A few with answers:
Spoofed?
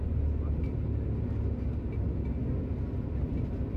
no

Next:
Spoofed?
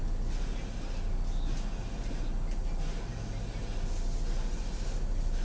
no